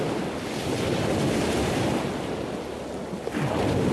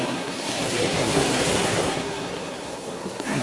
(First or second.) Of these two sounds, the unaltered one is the first